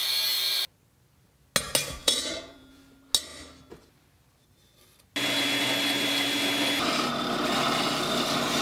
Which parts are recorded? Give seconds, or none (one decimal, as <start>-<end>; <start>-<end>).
0.0-2.0; 2.8-8.6